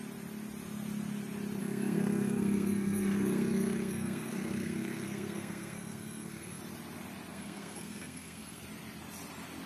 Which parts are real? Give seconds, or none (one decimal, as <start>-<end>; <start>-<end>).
0.0-1.6; 6.6-7.3; 8.6-9.7